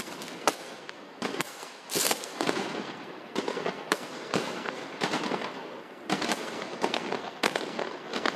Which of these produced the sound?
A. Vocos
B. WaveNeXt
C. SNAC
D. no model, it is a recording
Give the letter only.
C